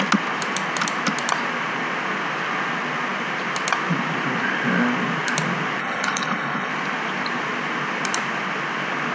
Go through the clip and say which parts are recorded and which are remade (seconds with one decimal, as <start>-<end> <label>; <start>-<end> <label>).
0.0-5.8 recorded; 5.8-6.7 remade; 6.7-9.1 recorded